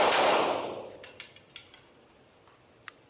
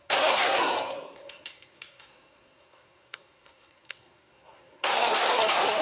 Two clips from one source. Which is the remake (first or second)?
second